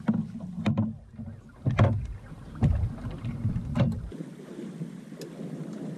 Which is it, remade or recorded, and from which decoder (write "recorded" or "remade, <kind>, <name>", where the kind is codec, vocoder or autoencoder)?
recorded